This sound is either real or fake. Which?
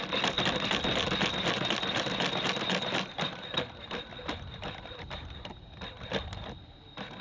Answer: real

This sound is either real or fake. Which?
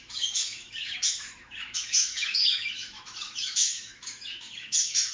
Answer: fake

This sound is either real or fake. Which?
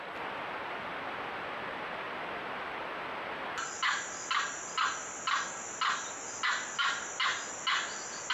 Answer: real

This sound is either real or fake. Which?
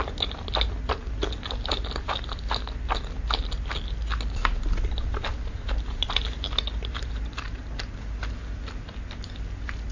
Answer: real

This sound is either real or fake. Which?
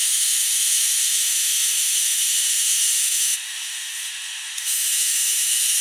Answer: fake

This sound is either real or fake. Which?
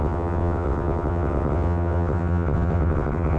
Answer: fake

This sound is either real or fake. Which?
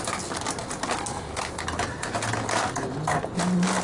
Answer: real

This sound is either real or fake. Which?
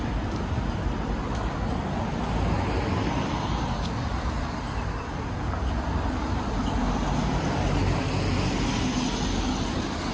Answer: real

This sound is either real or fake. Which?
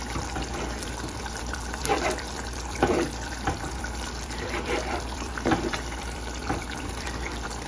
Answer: fake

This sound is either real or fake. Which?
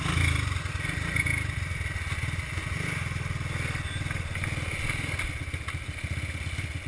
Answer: real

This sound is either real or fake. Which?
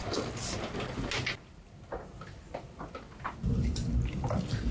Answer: real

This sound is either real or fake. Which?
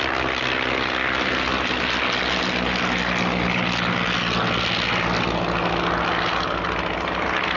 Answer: real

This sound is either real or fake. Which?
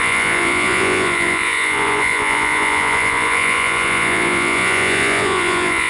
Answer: fake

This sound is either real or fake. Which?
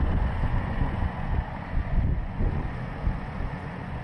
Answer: fake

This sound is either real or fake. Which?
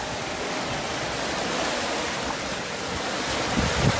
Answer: real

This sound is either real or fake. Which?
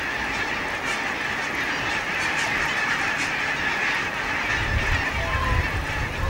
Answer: real